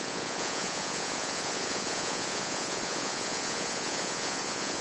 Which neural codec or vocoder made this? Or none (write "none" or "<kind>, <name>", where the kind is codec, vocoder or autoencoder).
vocoder, Vocos